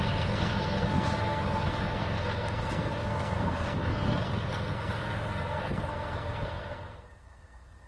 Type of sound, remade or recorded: remade